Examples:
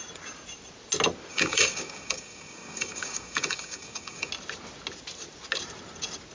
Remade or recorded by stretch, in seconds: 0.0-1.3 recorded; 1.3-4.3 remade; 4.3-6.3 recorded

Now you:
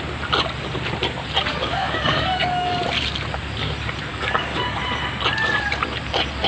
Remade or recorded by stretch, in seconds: 0.0-1.5 recorded; 1.5-2.8 remade; 2.8-4.1 recorded; 4.1-4.8 remade; 4.8-6.5 recorded